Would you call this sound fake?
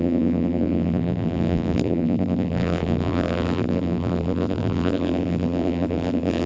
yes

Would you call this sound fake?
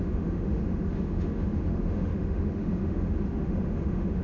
yes